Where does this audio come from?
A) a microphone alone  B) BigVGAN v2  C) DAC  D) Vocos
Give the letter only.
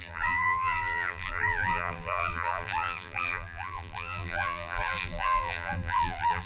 B